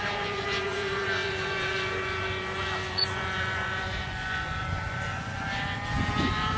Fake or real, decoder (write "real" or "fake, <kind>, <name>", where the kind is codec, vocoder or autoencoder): fake, vocoder, Vocos